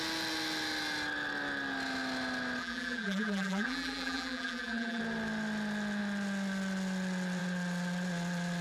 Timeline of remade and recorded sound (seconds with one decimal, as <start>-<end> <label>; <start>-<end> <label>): 0.0-2.6 recorded; 2.6-5.0 remade; 5.0-8.6 recorded